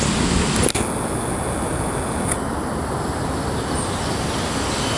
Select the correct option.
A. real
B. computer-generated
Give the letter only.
A